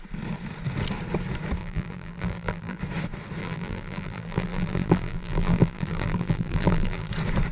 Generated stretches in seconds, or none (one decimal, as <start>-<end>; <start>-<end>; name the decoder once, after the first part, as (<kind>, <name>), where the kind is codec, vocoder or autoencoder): 1.6-2.8 (vocoder, BigVGAN v2); 3.4-7.1

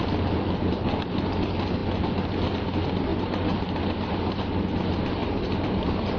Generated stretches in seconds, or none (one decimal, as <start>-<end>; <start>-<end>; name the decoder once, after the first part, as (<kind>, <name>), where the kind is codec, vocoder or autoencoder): 3.1-4.3 (vocoder, BigVGAN v2); 5.2-6.2

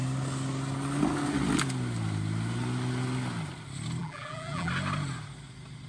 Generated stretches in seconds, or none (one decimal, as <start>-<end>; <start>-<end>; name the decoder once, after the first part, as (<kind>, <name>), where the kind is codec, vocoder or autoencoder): 4.0-4.7 (vocoder, BigVGAN v2)

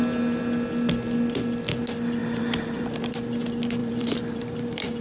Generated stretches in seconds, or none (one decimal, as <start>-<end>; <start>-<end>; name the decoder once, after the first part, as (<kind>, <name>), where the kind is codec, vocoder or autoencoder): 2.2-3.1 (vocoder, BigVGAN v2); 3.8-5.0

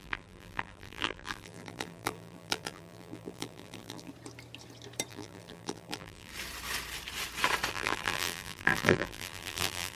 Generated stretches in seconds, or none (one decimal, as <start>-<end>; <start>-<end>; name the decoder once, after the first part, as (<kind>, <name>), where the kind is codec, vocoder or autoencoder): 0.0-4.1 (vocoder, BigVGAN v2); 5.1-6.3; 7.7-10.0